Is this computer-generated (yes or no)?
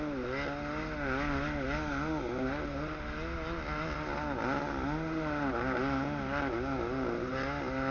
no